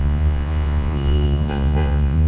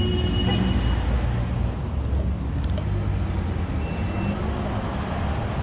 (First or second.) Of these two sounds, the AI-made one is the first